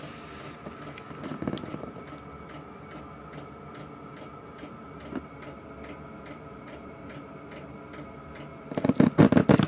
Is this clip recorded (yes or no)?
yes